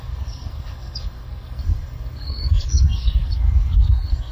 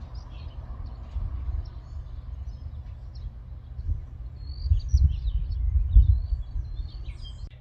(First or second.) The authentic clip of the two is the second